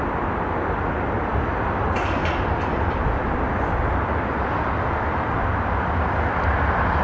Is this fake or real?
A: real